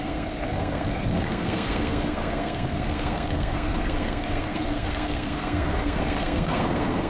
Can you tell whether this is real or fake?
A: fake